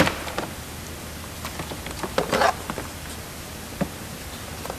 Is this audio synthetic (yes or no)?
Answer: no